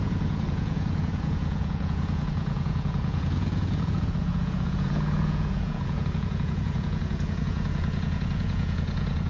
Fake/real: fake